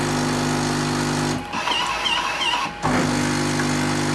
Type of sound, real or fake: real